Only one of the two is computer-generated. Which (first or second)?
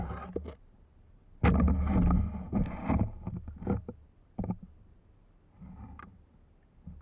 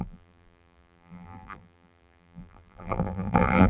second